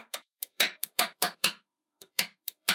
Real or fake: fake